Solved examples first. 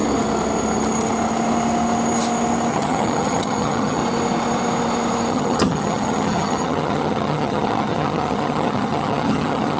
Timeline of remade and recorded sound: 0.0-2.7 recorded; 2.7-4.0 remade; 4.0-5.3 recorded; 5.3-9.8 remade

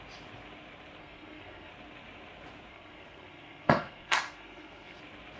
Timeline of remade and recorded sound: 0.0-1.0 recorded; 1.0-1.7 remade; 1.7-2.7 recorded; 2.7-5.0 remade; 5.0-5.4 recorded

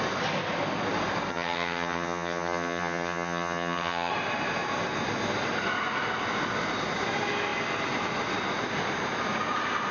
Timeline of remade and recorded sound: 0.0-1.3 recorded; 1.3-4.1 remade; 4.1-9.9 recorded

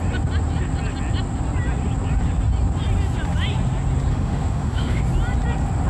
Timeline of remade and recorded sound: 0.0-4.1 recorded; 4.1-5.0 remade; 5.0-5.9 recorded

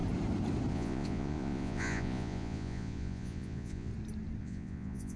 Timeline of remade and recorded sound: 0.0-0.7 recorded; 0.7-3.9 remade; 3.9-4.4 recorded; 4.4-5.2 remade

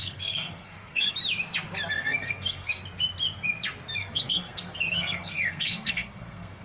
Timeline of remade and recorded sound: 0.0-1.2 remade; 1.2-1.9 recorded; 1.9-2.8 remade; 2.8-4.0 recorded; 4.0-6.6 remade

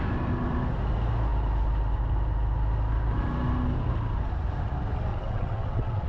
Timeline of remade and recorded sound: 0.0-5.1 recorded; 5.1-6.1 remade

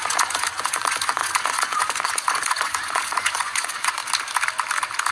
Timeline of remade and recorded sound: 0.0-4.0 remade; 4.0-5.1 recorded